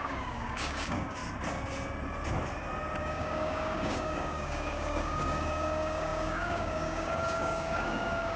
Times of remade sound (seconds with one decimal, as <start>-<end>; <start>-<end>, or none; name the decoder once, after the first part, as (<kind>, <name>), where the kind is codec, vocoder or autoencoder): 0.0-1.2 (codec, DAC); 3.0-8.4